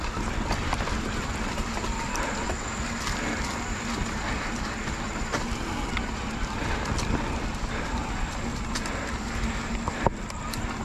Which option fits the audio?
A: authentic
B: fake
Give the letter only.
A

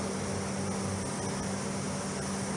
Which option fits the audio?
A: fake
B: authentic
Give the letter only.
B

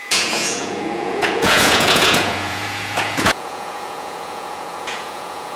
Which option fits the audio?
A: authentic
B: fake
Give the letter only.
B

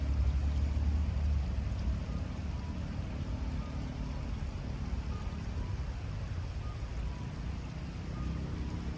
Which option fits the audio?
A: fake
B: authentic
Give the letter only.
B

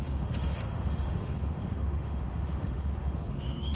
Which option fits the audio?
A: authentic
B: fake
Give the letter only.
B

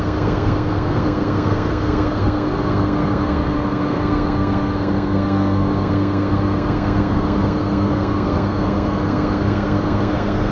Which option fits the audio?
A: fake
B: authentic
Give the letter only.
A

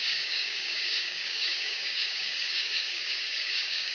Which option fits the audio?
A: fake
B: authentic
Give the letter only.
A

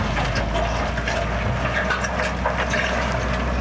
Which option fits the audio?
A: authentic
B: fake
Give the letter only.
A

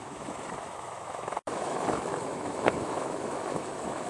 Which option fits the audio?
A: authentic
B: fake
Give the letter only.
B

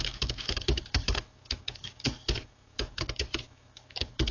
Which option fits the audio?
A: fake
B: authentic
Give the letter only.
A